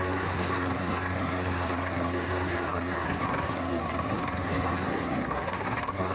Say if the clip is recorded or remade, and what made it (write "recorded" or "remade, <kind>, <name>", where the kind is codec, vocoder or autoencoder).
remade, codec, SNAC